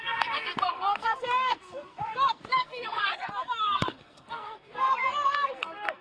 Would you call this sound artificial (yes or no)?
yes